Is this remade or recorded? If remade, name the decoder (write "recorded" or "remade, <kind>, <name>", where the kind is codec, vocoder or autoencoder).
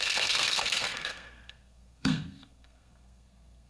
remade, codec, SNAC